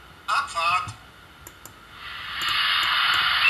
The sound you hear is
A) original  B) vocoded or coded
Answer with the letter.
A